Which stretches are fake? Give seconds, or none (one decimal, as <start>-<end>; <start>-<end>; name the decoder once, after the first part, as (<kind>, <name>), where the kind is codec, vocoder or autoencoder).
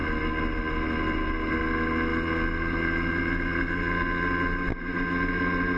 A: none